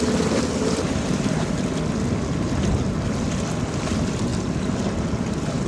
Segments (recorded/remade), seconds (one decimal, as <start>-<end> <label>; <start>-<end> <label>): 0.0-0.5 recorded; 0.5-1.6 remade; 1.6-5.7 recorded